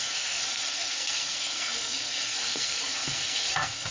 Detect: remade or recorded remade